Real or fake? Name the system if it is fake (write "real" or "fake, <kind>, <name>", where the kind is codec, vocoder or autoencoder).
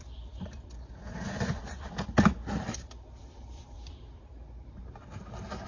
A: fake, vocoder, BigVGAN v2